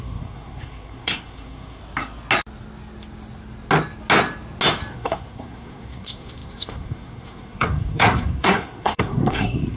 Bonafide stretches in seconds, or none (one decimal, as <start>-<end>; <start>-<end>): 1.8-4.9